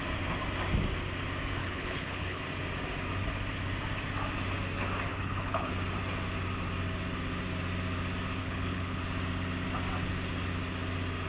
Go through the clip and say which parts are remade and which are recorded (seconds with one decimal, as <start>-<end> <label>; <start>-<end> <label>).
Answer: 0.0-1.6 recorded; 1.6-2.4 remade; 2.4-5.1 recorded; 5.1-5.7 remade; 5.7-8.4 recorded; 8.4-9.0 remade; 9.0-11.3 recorded